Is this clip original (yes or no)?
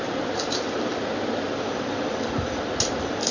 yes